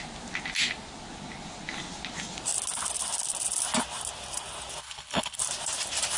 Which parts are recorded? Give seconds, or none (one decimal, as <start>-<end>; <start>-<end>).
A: 0.0-4.8; 5.4-6.2